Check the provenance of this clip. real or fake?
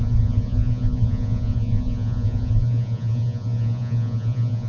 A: fake